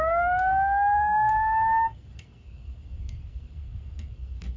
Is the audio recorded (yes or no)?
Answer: no